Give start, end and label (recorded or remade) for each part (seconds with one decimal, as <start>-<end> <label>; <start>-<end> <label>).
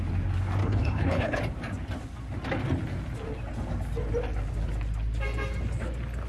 0.0-0.6 recorded; 0.6-1.4 remade; 1.4-6.3 recorded